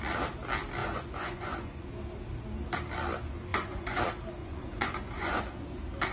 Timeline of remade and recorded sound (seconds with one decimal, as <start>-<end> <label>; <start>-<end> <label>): 0.0-0.8 recorded; 0.8-1.9 remade; 1.9-3.5 recorded; 3.5-4.0 remade; 4.0-4.4 recorded; 4.4-5.4 remade; 5.4-6.1 recorded